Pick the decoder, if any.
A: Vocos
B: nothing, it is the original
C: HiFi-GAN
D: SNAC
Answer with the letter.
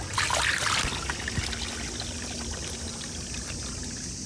B